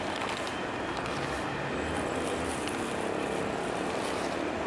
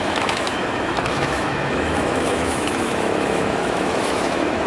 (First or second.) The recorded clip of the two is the first